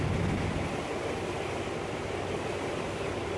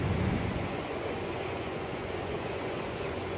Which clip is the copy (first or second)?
second